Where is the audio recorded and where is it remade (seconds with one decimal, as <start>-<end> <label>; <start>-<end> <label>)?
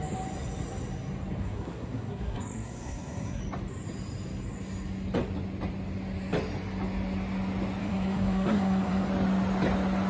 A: 0.0-1.4 recorded; 1.4-3.4 remade; 3.4-7.8 recorded; 7.8-9.1 remade; 9.1-10.1 recorded